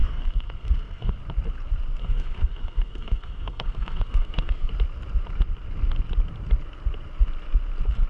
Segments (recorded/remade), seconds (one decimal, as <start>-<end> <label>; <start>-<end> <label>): 0.0-1.1 remade; 1.1-2.0 recorded; 2.0-4.7 remade; 4.7-8.1 recorded